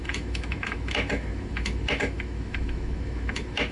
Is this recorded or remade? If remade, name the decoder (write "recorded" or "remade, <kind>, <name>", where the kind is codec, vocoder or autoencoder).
remade, autoencoder, DAC-VAE